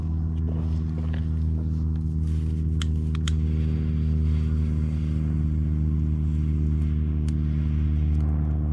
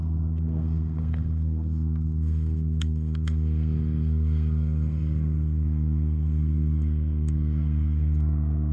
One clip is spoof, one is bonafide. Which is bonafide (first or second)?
first